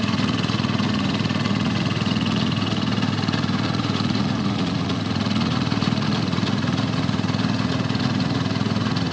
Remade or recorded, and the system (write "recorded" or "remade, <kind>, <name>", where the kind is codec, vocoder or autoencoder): remade, vocoder, Vocos